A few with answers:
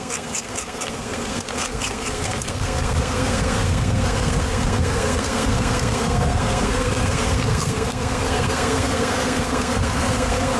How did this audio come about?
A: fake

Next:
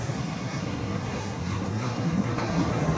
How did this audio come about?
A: fake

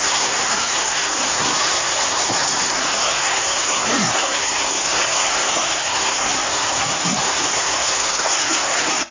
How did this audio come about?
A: fake